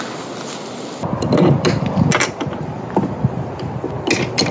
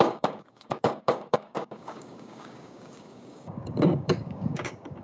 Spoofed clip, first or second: second